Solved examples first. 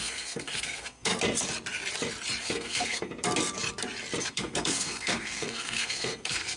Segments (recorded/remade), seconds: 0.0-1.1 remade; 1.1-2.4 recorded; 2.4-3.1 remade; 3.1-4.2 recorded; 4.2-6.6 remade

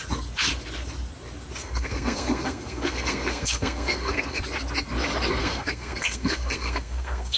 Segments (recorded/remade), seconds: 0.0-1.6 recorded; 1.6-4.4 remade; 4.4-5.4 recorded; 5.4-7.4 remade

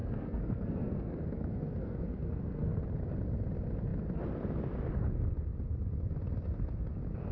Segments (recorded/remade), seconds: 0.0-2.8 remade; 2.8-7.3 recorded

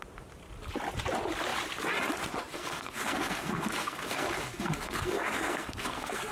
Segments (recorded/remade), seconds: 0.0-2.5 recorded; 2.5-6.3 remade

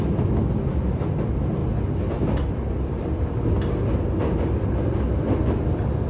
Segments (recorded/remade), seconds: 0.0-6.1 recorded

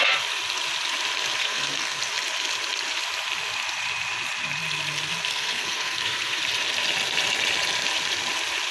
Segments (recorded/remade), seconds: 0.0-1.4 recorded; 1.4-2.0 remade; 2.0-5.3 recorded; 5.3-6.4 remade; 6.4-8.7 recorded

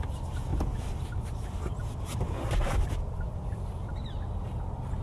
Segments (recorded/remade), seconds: 0.0-5.0 recorded